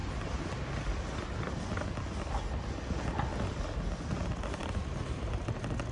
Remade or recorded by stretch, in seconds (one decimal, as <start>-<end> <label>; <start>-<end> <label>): 0.0-5.9 recorded